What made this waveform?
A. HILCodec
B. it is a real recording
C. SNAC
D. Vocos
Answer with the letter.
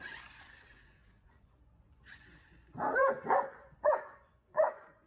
D